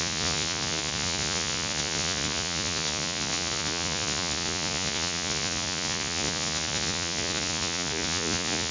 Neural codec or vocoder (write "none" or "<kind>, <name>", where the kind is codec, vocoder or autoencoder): vocoder, Vocos